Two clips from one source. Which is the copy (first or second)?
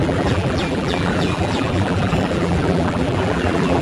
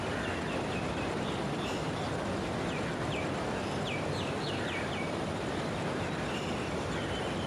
first